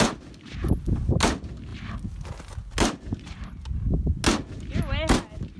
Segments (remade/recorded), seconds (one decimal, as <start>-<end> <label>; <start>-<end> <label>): 0.0-5.6 recorded